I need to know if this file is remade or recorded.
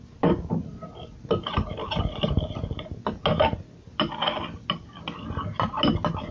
recorded